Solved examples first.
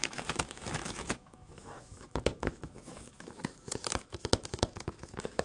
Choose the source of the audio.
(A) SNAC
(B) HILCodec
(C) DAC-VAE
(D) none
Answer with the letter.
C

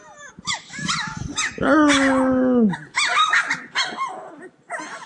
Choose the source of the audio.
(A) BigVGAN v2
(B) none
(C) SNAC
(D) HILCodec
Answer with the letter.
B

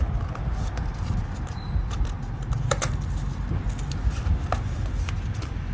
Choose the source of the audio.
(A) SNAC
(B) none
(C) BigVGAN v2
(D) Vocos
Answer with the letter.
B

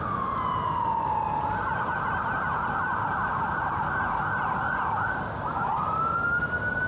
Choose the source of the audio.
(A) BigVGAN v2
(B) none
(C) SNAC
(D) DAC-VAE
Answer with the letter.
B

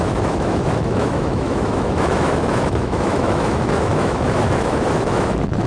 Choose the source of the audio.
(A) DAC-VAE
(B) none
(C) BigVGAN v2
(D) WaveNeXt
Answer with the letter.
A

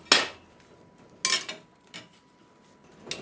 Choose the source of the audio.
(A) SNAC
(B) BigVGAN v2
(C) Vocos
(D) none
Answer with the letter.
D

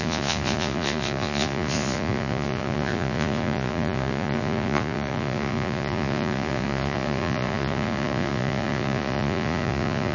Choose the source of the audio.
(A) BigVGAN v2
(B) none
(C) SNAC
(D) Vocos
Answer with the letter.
D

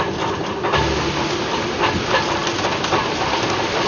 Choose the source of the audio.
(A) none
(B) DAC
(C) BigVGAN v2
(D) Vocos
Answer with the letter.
A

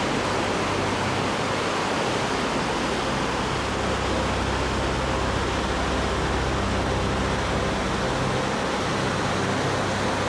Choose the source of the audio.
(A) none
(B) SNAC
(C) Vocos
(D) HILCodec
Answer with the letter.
A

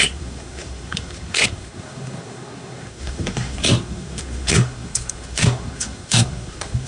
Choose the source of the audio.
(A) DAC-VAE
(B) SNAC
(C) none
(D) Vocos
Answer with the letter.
B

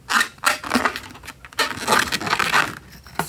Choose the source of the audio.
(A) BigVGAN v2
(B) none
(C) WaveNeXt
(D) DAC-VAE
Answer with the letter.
B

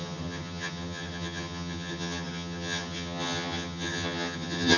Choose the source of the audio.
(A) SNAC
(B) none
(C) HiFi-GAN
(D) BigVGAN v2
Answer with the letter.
C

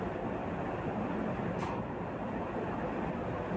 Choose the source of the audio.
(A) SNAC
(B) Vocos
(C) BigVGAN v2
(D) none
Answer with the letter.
D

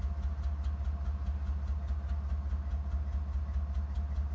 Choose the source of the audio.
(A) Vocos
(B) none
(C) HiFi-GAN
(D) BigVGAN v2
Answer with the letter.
B